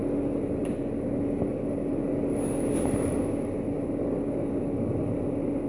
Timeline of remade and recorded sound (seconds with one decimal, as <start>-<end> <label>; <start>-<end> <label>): 0.0-5.7 recorded